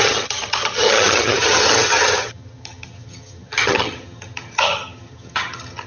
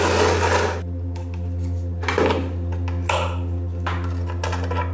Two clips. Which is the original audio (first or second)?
second